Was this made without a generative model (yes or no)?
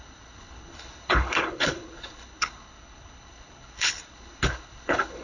no